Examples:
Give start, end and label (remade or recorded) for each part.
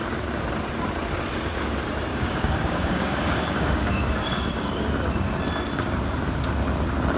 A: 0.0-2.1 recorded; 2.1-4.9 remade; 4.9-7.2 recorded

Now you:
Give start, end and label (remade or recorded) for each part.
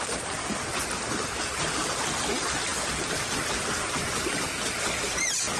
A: 0.0-5.6 recorded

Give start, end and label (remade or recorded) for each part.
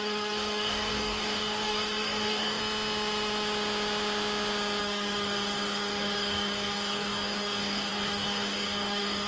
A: 0.0-2.6 remade; 2.6-4.8 recorded; 4.8-9.3 remade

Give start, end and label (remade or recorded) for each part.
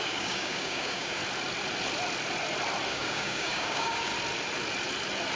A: 0.0-1.2 remade; 1.2-2.9 recorded; 2.9-4.1 remade; 4.1-5.4 recorded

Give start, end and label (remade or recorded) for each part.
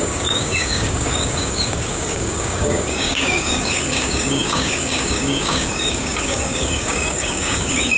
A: 0.0-8.0 remade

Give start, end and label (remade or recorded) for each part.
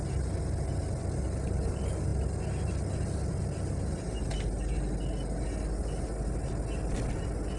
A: 0.0-7.6 recorded